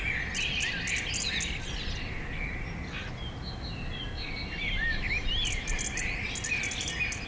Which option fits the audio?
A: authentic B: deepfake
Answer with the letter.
A